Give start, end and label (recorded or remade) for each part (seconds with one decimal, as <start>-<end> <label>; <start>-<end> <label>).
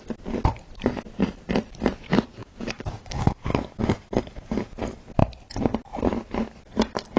0.0-2.4 recorded; 2.4-3.5 remade; 3.5-7.2 recorded